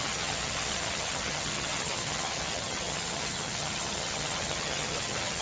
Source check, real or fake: fake